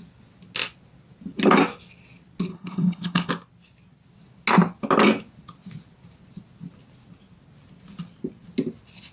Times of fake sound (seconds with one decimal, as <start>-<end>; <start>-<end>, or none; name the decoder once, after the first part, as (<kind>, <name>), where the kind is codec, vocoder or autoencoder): 2.5-3.3 (codec, HILCodec)